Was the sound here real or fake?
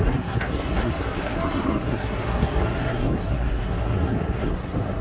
fake